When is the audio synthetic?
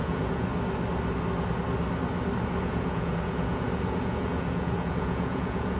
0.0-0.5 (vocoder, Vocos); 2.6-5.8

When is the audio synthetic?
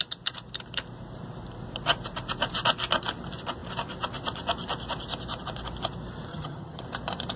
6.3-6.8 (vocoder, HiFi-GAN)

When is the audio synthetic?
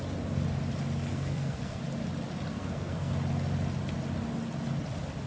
1.1-1.8 (codec, SNAC); 2.5-3.1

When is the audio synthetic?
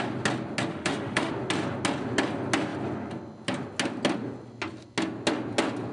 0.7-1.3 (autoencoder, DAC-VAE)